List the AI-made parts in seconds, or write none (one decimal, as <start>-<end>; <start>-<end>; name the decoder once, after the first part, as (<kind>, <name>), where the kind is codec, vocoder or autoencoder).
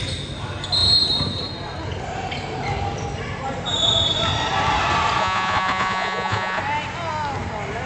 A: 5.2-6.6 (vocoder, Vocos)